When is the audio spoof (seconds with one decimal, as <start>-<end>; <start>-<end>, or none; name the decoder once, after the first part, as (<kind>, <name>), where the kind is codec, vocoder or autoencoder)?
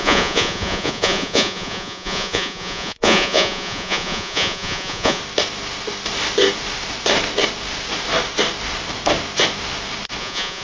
0.0-5.2 (vocoder, Vocos); 10.2-10.6